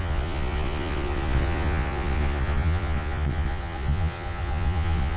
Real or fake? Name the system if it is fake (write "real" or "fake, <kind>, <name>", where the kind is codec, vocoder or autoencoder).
fake, vocoder, Vocos